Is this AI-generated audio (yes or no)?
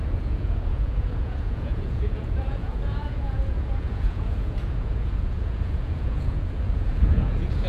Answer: yes